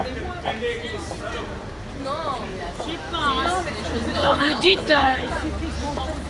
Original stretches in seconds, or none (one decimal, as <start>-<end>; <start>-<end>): 0.0-4.2; 5.3-6.3